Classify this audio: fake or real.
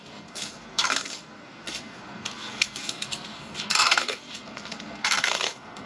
fake